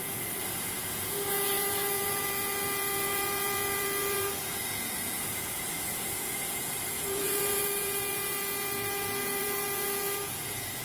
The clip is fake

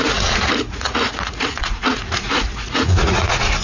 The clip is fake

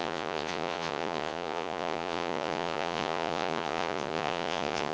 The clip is fake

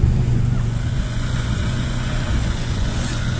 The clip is fake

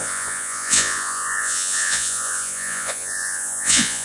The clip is fake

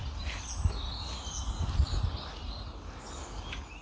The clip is real